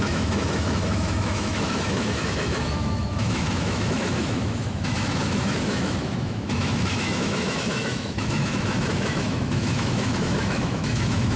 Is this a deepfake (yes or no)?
yes